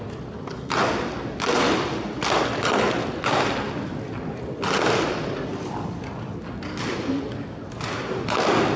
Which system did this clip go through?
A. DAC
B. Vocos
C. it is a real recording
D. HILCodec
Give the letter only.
C